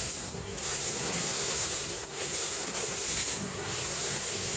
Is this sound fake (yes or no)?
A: yes